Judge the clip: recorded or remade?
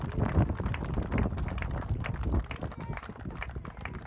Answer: recorded